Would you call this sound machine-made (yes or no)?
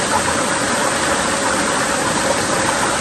no